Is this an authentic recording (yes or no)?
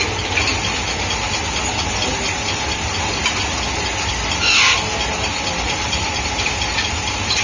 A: yes